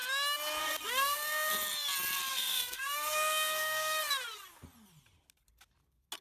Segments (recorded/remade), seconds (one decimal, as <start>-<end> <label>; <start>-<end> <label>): 0.0-0.6 recorded; 0.6-1.5 remade; 1.5-2.3 recorded; 2.3-4.0 remade; 4.0-6.2 recorded